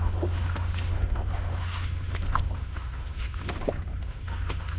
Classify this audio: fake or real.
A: fake